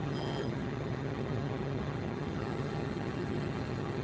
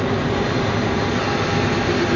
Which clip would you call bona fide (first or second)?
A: second